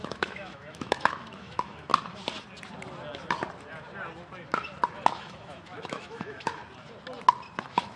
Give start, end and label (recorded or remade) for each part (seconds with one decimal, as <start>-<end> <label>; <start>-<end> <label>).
0.0-1.9 remade; 1.9-5.1 recorded; 5.1-6.6 remade; 6.6-7.6 recorded; 7.6-8.0 remade